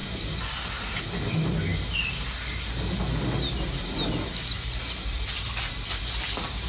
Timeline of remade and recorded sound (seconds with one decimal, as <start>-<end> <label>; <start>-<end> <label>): 0.0-6.7 recorded